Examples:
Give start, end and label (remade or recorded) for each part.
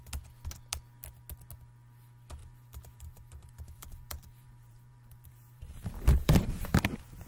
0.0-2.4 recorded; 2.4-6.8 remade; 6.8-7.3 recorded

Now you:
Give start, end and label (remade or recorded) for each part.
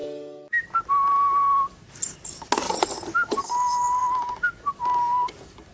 0.0-5.7 recorded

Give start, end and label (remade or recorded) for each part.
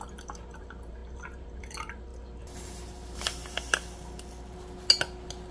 0.0-2.1 remade; 2.1-5.5 recorded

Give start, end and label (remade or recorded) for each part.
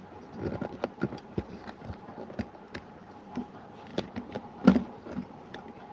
0.0-1.1 recorded; 1.1-3.5 remade; 3.5-5.9 recorded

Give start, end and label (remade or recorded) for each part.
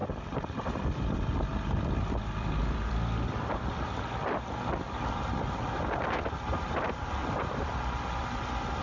0.0-3.5 remade; 3.5-7.2 recorded; 7.2-8.2 remade; 8.2-8.8 recorded